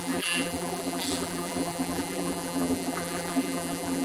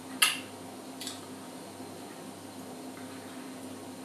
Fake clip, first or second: first